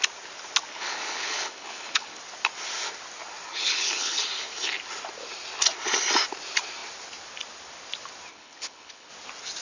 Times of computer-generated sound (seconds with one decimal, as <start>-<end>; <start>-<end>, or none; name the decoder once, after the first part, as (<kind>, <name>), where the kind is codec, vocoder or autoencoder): 0.7-2.2 (codec, HILCodec); 3.5-4.3; 8.3-9.1

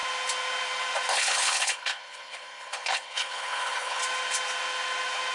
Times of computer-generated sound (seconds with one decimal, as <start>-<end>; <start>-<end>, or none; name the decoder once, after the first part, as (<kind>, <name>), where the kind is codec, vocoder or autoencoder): 1.1-4.0 (codec, HILCodec)